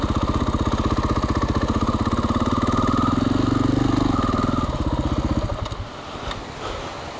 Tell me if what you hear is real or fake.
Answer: real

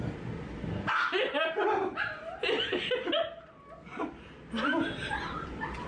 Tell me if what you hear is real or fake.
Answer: real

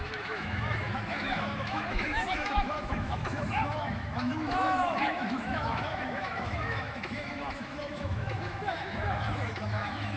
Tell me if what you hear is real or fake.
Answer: fake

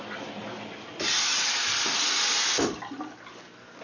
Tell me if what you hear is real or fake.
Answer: real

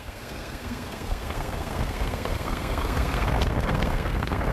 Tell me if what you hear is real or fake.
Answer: fake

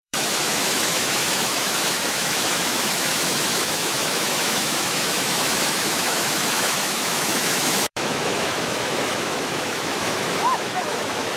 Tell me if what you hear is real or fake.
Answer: fake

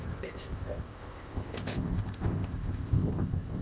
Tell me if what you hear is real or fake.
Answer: fake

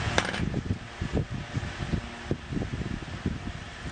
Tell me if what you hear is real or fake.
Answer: real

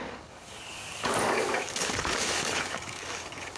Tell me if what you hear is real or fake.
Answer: fake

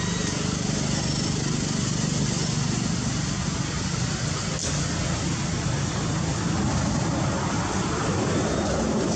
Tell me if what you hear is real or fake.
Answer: real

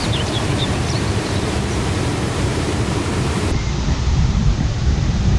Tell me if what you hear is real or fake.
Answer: fake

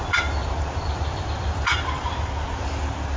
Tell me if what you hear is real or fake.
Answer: real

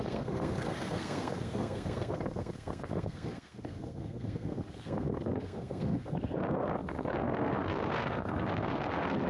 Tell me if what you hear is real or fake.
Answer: fake